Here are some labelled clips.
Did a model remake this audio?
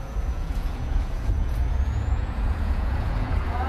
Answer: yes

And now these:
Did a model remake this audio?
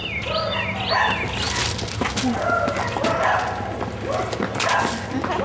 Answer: no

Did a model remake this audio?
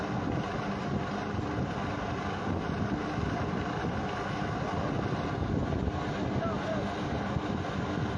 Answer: no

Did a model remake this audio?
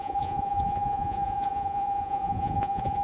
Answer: yes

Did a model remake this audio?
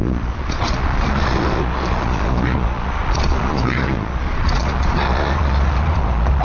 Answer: yes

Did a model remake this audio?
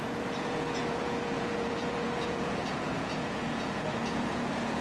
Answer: yes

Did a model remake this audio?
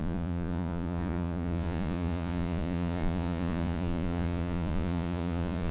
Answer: yes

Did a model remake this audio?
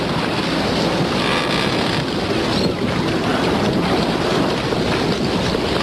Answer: no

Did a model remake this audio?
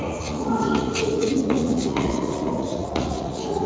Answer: yes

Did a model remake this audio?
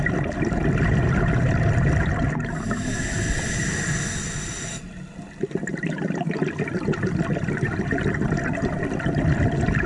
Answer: no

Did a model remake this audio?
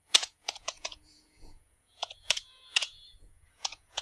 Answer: yes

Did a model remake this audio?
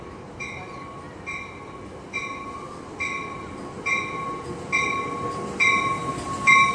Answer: no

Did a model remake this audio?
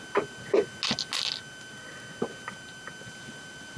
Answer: no